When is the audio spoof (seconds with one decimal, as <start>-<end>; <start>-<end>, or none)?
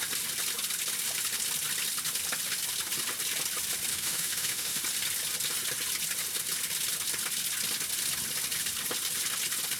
3.9-4.8